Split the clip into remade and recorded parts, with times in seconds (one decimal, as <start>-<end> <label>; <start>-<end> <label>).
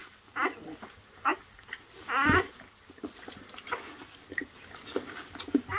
0.0-5.8 recorded